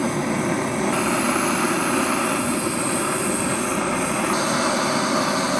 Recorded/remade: recorded